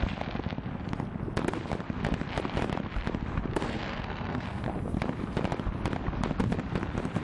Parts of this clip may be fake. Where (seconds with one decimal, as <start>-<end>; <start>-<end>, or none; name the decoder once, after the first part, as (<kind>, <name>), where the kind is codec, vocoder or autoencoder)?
3.6-4.6 (codec, SNAC)